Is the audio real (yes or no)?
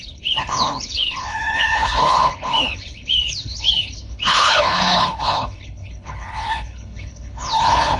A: no